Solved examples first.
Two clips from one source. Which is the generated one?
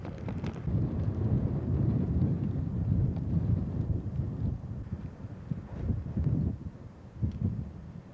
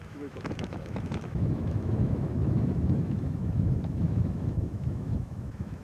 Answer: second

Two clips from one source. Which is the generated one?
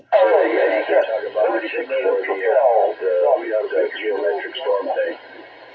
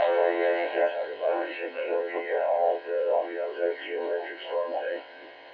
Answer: second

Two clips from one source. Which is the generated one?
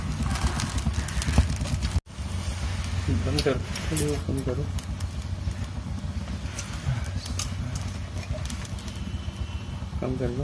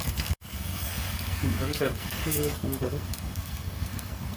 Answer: second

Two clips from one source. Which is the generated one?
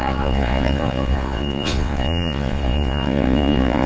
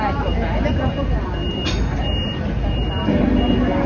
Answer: first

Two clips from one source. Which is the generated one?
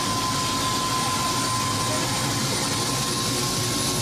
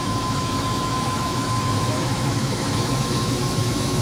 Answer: second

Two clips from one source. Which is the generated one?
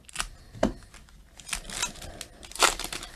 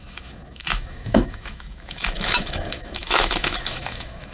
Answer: second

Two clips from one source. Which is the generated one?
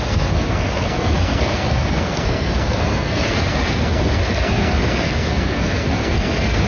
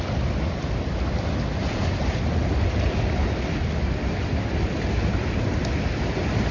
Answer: first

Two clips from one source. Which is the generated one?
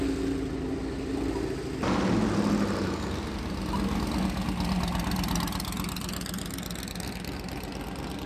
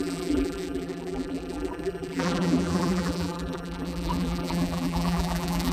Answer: second